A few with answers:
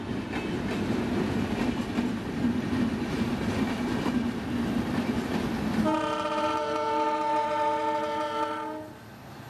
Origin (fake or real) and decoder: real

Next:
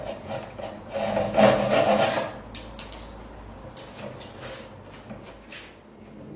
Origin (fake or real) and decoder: real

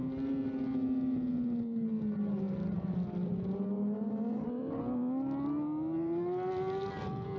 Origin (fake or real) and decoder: real